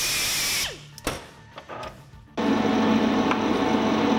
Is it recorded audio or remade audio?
recorded